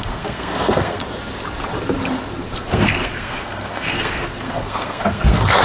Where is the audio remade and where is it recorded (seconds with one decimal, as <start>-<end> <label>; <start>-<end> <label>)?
0.0-1.0 remade; 1.0-2.4 recorded; 2.4-5.6 remade

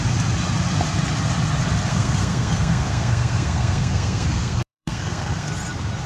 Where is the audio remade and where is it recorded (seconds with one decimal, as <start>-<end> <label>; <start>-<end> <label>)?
0.0-1.9 recorded; 1.9-5.5 remade; 5.5-6.1 recorded

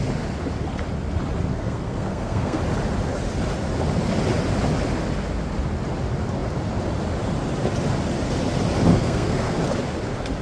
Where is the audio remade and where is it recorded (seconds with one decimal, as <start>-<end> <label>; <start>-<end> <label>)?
0.0-1.5 recorded; 1.5-2.6 remade; 2.6-8.9 recorded; 8.9-9.6 remade; 9.6-10.4 recorded

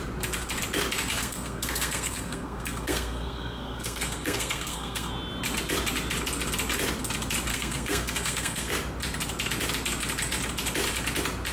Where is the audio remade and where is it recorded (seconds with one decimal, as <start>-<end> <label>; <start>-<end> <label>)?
0.0-1.2 recorded; 1.2-5.1 remade; 5.1-7.5 recorded; 7.5-8.7 remade; 8.7-11.5 recorded

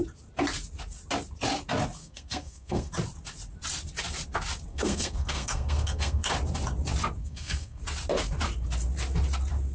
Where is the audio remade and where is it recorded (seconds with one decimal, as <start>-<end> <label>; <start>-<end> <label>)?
0.0-2.0 recorded; 2.0-2.9 remade; 2.9-4.7 recorded; 4.7-6.3 remade; 6.3-7.2 recorded; 7.2-7.8 remade; 7.8-9.7 recorded